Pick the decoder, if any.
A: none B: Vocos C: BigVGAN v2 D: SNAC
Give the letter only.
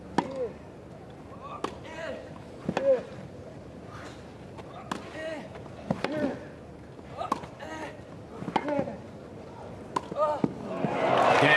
A